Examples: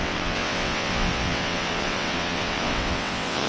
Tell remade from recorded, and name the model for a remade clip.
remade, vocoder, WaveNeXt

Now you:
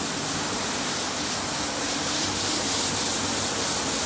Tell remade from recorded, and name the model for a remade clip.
recorded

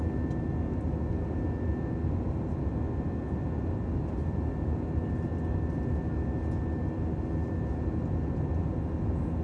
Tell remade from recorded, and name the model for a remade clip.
recorded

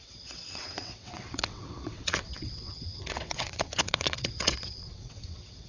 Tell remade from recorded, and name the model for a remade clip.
remade, vocoder, WaveNeXt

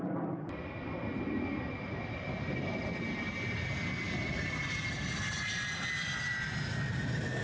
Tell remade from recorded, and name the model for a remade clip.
recorded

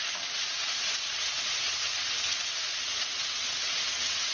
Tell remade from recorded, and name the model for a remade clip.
remade, vocoder, WaveNeXt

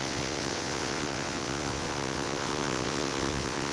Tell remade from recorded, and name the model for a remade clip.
remade, vocoder, WaveNeXt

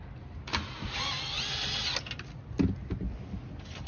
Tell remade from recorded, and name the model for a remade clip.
recorded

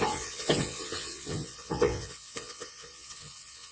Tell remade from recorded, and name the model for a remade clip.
remade, vocoder, WaveNeXt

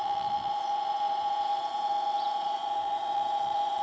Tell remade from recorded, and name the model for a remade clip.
remade, vocoder, WaveNeXt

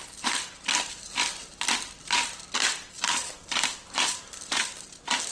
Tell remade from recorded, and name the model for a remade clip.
recorded